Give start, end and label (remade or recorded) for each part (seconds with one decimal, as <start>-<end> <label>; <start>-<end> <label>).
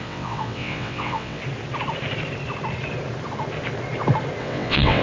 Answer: 0.0-1.4 remade; 1.4-4.4 recorded; 4.4-5.0 remade